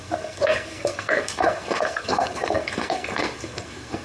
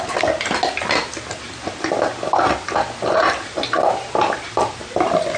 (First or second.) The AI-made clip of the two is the first